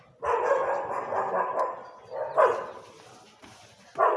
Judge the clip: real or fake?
real